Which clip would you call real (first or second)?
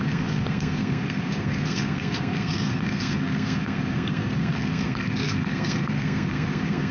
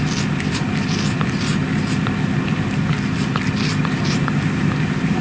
second